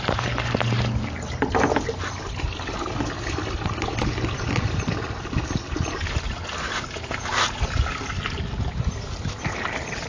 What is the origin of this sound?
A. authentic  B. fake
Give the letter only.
A